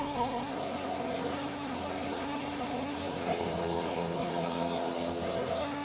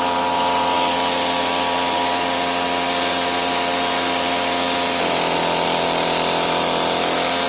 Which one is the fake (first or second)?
first